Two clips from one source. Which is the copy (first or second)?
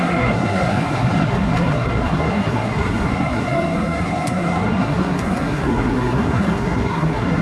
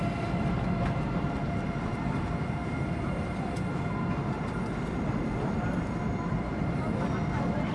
first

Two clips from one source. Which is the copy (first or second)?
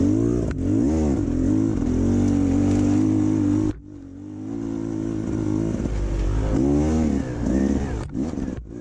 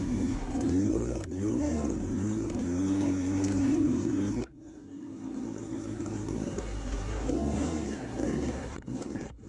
second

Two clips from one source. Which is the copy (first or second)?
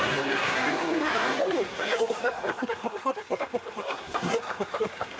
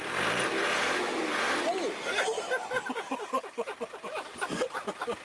first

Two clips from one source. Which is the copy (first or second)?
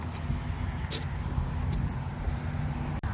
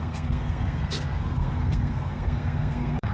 second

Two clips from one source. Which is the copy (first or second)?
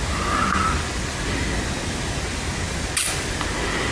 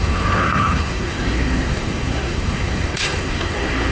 second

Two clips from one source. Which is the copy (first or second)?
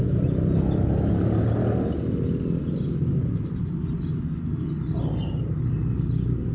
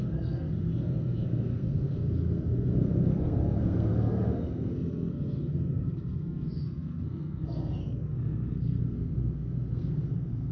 second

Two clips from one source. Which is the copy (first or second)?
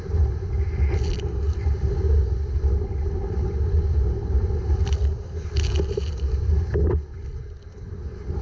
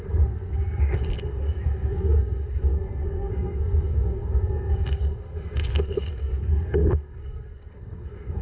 second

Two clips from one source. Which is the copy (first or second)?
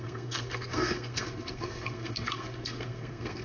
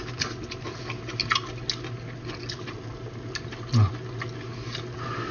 first